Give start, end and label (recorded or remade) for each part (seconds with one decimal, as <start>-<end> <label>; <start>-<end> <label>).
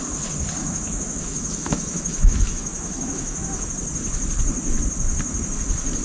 0.0-0.6 recorded; 0.6-3.7 remade; 3.7-6.0 recorded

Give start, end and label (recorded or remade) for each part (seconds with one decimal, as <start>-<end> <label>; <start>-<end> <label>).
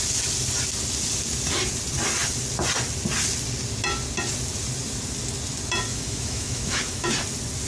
0.0-5.9 recorded; 5.9-7.1 remade; 7.1-7.7 recorded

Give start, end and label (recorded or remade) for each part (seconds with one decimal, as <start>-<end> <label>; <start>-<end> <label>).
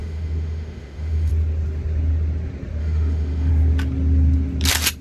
0.0-1.3 remade; 1.3-2.8 recorded; 2.8-3.5 remade; 3.5-5.0 recorded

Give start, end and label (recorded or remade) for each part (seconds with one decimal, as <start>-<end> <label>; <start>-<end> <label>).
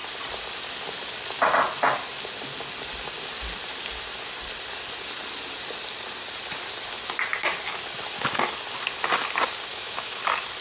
0.0-9.7 recorded; 9.7-10.2 remade; 10.2-10.6 recorded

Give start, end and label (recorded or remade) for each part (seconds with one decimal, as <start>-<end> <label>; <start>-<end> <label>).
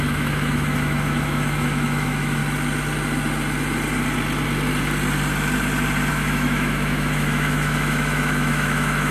0.0-2.4 remade; 2.4-6.1 recorded; 6.1-9.1 remade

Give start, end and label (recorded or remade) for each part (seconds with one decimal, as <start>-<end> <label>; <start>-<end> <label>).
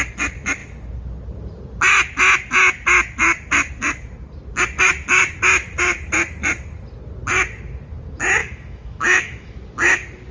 0.0-8.4 recorded; 8.4-9.6 remade; 9.6-10.3 recorded